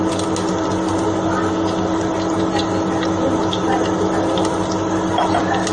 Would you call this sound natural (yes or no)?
yes